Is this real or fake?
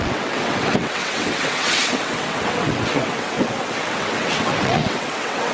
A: fake